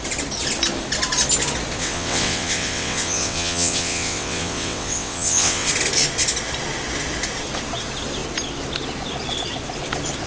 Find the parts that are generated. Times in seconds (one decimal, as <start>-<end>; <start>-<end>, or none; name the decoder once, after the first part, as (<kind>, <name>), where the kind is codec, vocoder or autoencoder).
1.8-5.7 (vocoder, WaveNeXt)